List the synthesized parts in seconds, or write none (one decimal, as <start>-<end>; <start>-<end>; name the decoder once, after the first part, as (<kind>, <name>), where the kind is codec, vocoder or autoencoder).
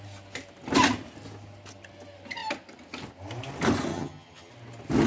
3.9-4.5 (vocoder, HiFi-GAN)